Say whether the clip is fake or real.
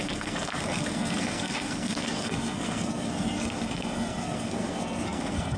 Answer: fake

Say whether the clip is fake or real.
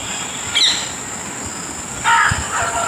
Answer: real